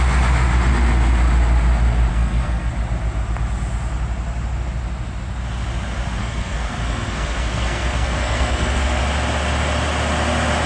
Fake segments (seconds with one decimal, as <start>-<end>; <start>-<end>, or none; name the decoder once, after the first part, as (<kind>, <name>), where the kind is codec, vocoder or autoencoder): 2.1-2.7 (codec, SNAC); 6.2-9.0